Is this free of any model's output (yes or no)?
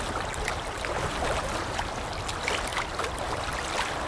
yes